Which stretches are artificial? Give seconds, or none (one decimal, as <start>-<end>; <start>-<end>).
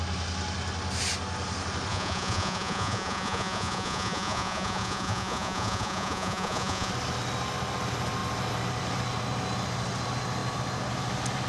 1.9-6.9